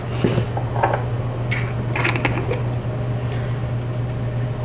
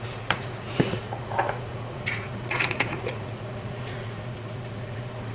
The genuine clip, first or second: first